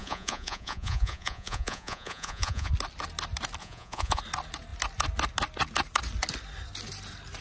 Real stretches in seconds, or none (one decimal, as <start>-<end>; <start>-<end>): 2.7-3.6; 4.2-7.4